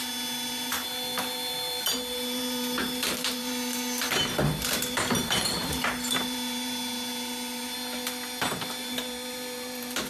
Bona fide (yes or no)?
no